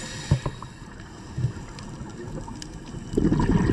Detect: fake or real real